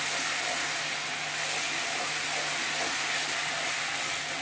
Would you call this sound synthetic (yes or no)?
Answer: no